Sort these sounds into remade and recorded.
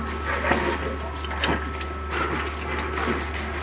recorded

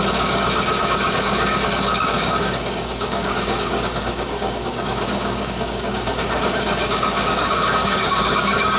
remade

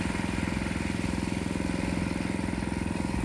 recorded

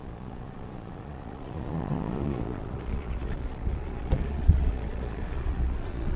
remade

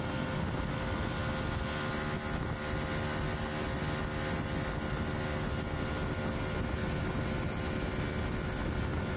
recorded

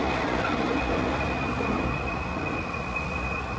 remade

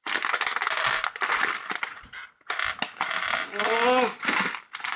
recorded